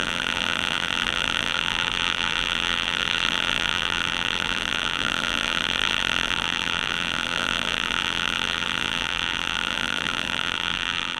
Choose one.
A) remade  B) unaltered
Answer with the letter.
A